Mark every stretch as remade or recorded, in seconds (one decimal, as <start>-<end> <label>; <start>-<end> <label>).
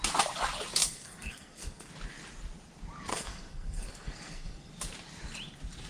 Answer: 0.0-0.8 recorded; 0.8-1.9 remade; 1.9-3.1 recorded; 3.1-4.7 remade; 4.7-5.9 recorded